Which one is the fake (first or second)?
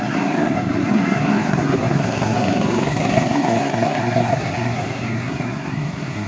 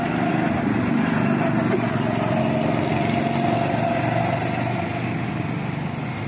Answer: first